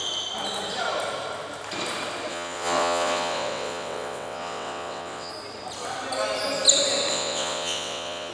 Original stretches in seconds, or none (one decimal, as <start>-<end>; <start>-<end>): 0.0-2.3; 5.3-7.1